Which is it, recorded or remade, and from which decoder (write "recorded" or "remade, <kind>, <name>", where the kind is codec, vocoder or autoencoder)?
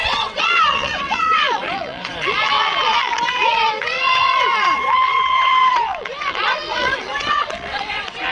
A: remade, vocoder, WaveNeXt